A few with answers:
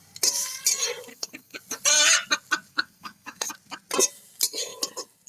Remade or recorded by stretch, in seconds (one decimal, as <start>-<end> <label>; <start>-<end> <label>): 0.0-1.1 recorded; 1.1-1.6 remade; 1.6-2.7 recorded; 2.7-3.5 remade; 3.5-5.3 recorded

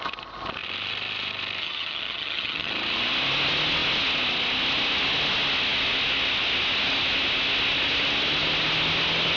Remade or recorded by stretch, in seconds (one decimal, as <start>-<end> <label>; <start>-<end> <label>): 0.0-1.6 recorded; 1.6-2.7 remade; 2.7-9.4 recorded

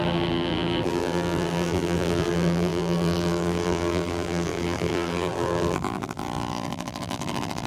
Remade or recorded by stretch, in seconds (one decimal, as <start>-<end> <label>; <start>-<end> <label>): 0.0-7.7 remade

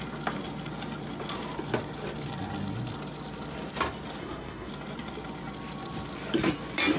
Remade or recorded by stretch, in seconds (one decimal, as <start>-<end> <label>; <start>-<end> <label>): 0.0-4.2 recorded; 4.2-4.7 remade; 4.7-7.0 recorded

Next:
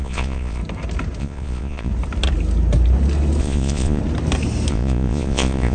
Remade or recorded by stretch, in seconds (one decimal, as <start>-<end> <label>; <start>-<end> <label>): 0.0-0.6 remade; 0.6-1.2 recorded; 1.2-1.9 remade; 1.9-3.4 recorded; 3.4-4.0 remade; 4.0-4.7 recorded; 4.7-5.7 remade

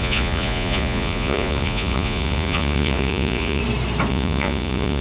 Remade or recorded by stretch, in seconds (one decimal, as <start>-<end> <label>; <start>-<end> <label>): 0.0-3.6 remade; 3.6-4.1 recorded; 4.1-5.0 remade

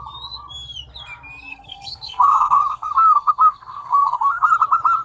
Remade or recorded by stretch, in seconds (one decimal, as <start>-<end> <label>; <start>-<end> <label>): 0.0-1.5 recorded; 1.5-4.5 remade; 4.5-5.0 recorded